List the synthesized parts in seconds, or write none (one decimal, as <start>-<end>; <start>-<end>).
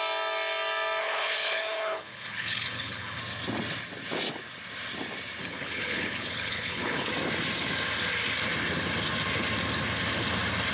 1.0-3.2; 5.4-7.1